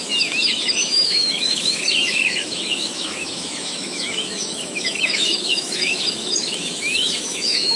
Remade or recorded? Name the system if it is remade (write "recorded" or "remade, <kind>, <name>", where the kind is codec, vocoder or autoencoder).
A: remade, autoencoder, DAC-VAE